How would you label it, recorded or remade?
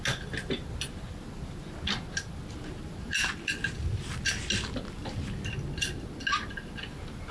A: recorded